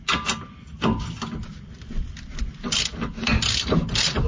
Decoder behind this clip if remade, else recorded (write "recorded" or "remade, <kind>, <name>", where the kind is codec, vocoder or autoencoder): recorded